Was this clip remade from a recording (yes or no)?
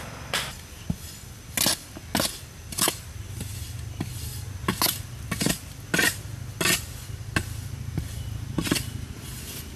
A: no